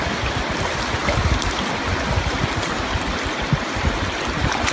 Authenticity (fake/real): real